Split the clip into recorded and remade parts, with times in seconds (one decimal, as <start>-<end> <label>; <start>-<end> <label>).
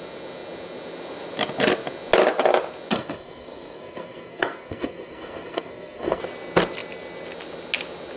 0.0-2.9 recorded; 2.9-6.2 remade; 6.2-8.2 recorded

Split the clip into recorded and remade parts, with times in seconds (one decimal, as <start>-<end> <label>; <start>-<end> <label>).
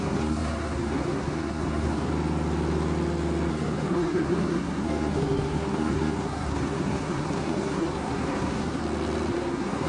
0.0-2.1 remade; 2.1-3.5 recorded; 3.5-8.8 remade; 8.8-9.3 recorded; 9.3-9.9 remade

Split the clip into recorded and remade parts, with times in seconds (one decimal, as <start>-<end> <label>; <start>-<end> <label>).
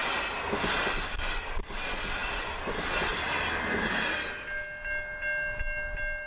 0.0-6.3 recorded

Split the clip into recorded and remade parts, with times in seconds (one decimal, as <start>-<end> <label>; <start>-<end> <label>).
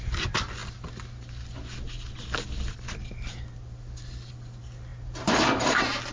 0.0-6.1 recorded